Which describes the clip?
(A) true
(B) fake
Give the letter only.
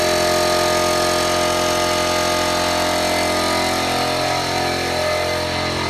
A